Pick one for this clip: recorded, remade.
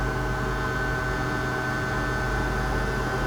recorded